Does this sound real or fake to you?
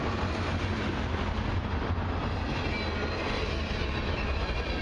real